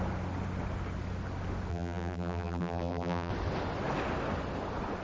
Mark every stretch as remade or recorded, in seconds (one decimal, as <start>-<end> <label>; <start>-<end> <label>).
0.0-1.7 recorded; 1.7-3.3 remade; 3.3-5.0 recorded